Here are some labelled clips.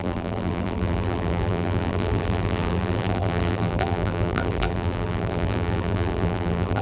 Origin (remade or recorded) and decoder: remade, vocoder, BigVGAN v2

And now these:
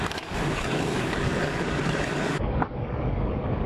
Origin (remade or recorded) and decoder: remade, codec, DAC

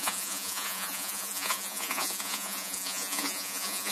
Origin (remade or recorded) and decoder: remade, vocoder, Vocos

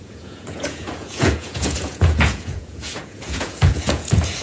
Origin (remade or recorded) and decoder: remade, vocoder, Vocos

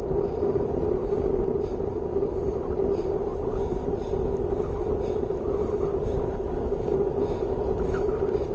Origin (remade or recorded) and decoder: recorded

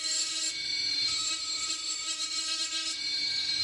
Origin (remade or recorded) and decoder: remade, autoencoder, DAC-VAE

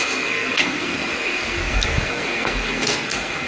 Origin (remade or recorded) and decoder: remade, codec, SNAC